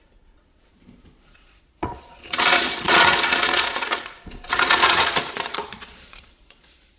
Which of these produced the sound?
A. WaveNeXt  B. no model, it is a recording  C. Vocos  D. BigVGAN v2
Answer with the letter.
C